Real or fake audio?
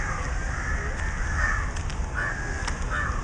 real